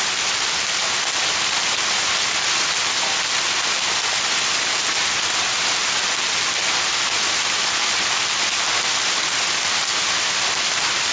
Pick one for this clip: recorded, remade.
recorded